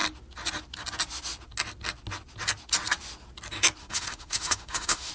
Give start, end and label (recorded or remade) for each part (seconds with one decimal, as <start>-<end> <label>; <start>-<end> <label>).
0.0-3.8 recorded; 3.8-5.1 remade